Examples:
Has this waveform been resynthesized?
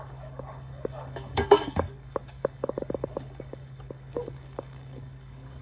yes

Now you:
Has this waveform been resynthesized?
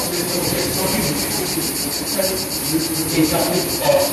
yes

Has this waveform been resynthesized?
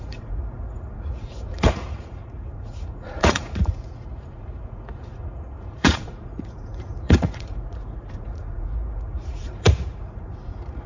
yes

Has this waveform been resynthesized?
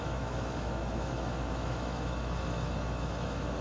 yes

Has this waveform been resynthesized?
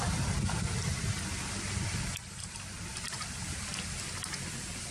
no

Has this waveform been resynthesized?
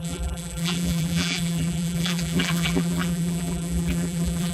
yes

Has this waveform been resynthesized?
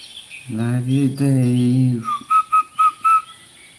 no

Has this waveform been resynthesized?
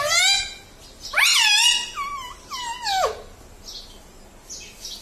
no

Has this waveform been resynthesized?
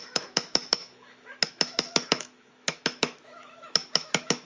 yes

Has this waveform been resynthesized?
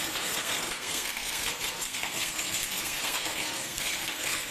yes